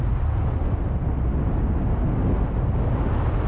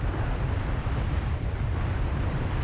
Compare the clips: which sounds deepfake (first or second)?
second